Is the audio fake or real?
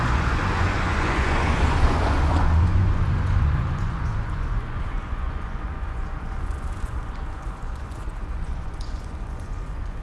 fake